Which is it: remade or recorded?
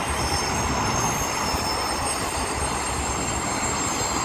recorded